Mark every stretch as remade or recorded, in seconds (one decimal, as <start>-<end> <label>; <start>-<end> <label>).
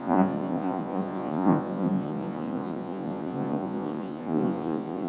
0.0-5.1 remade